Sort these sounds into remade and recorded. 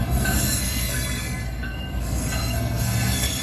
remade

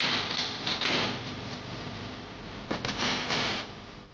recorded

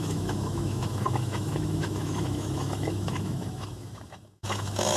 remade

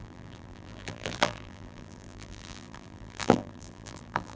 remade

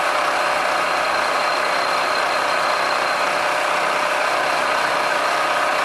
recorded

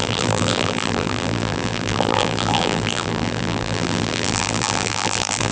remade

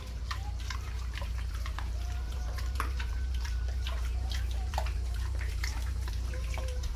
remade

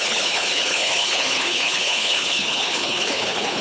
remade